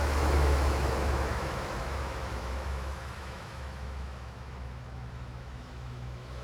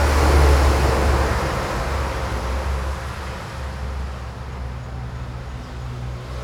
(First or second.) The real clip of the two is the second